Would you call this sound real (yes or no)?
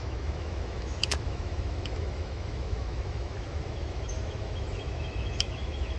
no